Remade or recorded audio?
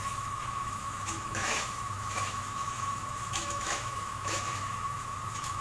remade